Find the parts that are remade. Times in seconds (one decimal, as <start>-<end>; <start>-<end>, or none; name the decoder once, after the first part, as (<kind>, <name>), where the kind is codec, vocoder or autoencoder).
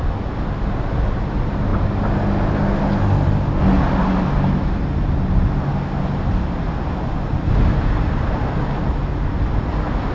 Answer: none